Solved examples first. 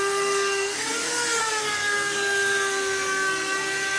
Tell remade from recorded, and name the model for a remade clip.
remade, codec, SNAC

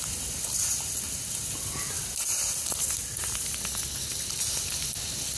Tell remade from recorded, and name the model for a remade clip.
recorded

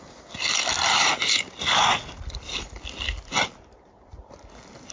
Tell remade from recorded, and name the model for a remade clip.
recorded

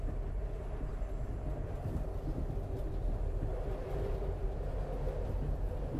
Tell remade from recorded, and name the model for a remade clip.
recorded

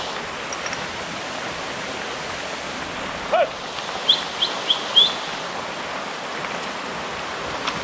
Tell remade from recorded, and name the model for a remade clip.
recorded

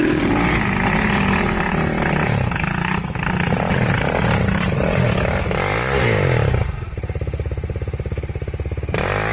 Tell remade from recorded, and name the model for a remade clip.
recorded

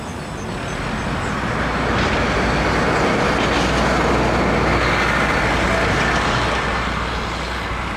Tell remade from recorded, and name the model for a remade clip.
recorded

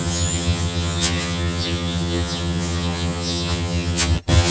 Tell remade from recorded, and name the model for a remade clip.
remade, vocoder, HiFi-GAN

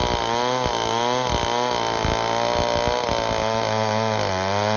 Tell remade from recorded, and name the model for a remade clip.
recorded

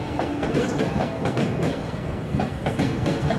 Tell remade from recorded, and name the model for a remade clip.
remade, codec, SNAC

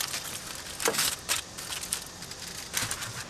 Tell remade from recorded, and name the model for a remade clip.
recorded